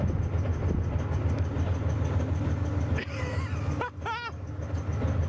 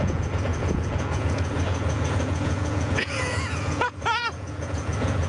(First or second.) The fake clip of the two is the second